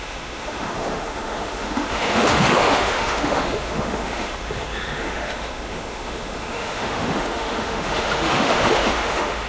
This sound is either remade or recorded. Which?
remade